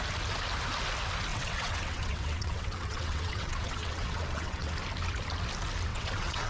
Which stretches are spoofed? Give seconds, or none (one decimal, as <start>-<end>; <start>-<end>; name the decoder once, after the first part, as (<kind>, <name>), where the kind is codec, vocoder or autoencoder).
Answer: 1.3-4.7 (vocoder, WaveNeXt); 5.9-6.5